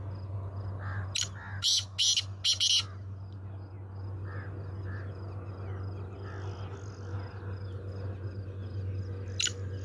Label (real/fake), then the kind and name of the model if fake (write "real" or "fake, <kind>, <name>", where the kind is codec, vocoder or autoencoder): real